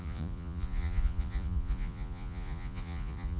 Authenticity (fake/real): fake